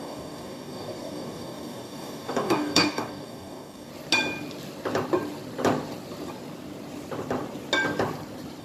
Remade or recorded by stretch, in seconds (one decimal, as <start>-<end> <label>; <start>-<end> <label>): 0.0-3.9 remade; 3.9-8.6 recorded